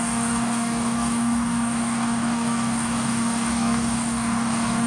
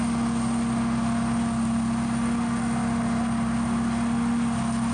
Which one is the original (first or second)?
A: second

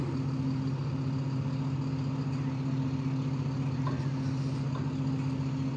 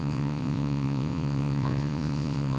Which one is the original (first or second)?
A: first